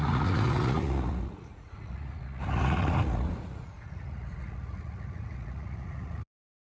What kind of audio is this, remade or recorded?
remade